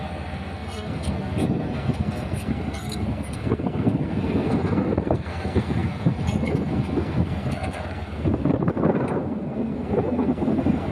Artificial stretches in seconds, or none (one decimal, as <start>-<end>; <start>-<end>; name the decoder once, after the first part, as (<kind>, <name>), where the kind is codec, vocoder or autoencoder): 0.0-10.9 (codec, SNAC)